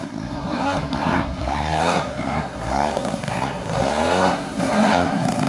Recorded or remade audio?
remade